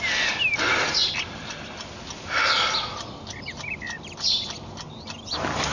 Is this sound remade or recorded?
recorded